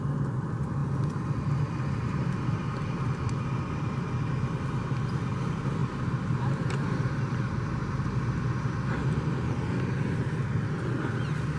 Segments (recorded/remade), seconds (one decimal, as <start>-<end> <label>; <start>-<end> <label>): 0.0-0.8 recorded; 0.8-4.5 remade; 4.5-7.8 recorded; 7.8-8.4 remade; 8.4-11.6 recorded